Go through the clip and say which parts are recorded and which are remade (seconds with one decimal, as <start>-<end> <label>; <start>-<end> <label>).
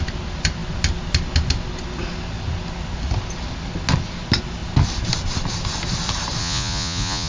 0.0-6.4 recorded; 6.4-7.3 remade